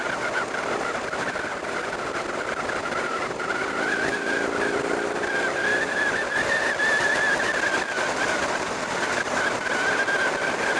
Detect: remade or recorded recorded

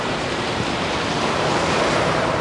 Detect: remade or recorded remade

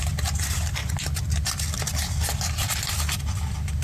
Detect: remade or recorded recorded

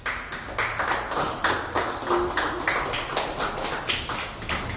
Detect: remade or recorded recorded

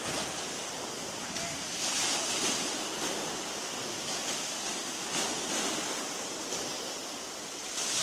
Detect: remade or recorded recorded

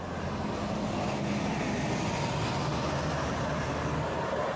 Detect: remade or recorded recorded